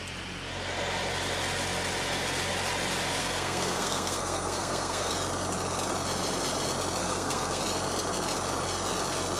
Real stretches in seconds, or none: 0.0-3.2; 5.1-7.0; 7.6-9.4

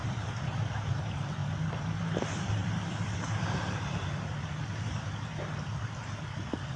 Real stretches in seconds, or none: 1.4-2.2

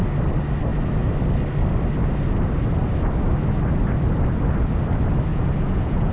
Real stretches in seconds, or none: 0.0-5.3

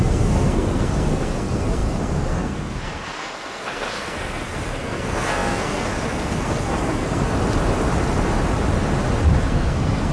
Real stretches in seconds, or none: 7.3-9.4

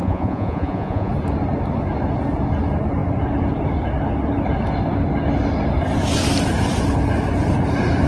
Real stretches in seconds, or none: 1.1-8.1

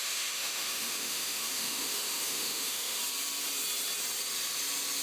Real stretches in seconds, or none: 3.0-5.0

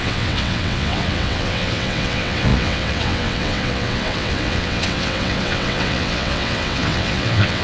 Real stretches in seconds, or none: none